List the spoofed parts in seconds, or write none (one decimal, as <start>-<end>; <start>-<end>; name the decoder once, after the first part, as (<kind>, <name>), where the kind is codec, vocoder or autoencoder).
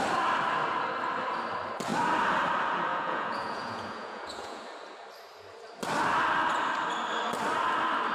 2.9-4.6 (vocoder, Vocos)